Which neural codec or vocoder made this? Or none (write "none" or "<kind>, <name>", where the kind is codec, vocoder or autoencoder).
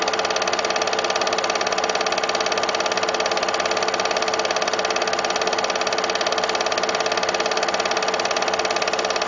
none